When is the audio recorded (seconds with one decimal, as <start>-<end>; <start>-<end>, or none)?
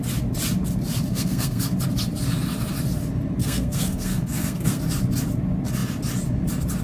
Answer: 0.0-1.1; 1.6-3.4; 4.8-6.8